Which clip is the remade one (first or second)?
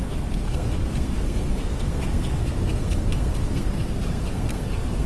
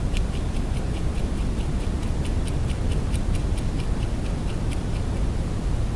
first